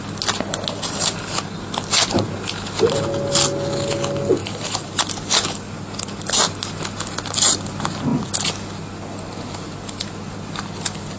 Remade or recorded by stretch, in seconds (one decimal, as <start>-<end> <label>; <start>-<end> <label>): 0.0-4.4 recorded; 4.4-5.1 remade; 5.1-11.2 recorded